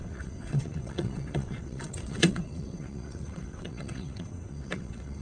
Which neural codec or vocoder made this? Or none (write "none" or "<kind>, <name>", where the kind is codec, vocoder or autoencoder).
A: vocoder, WaveNeXt